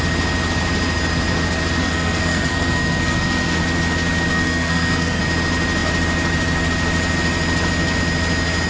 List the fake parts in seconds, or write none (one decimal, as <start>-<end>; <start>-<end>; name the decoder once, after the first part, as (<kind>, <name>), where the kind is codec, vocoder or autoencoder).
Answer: 1.8-3.6 (codec, SNAC); 4.3-5.2